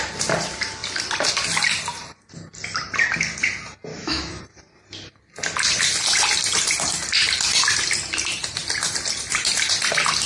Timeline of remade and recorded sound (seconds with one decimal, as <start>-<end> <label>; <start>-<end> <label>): 0.0-3.9 recorded; 3.9-4.4 remade; 4.4-10.3 recorded